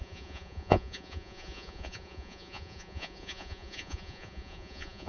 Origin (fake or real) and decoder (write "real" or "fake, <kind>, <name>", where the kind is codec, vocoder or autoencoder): fake, vocoder, Vocos